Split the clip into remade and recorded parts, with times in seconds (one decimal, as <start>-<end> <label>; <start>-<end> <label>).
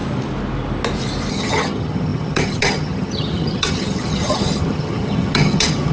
0.0-1.3 recorded; 1.3-5.9 remade